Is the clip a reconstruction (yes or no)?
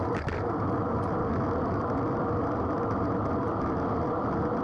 no